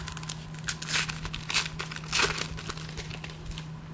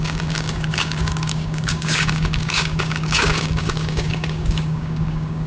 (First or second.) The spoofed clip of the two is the second